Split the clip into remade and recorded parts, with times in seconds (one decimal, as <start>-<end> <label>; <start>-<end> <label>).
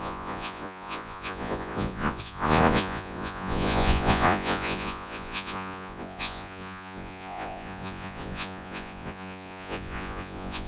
0.0-10.7 remade